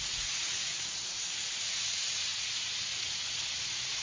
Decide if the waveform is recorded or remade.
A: remade